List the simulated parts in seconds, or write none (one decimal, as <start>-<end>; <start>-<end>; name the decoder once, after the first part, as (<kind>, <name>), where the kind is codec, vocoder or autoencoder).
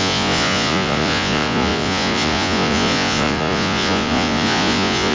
0.0-5.1 (vocoder, Vocos)